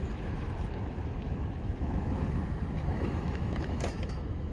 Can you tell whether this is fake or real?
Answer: fake